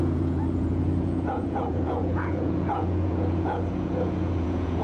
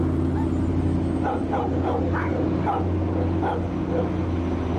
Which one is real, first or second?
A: second